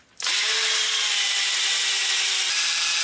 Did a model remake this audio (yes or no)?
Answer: no